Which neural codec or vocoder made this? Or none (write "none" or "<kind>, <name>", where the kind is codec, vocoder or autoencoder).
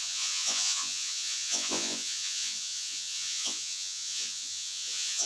vocoder, Vocos